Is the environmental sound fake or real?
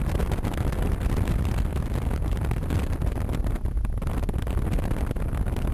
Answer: real